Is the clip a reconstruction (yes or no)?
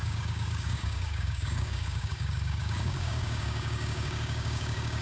yes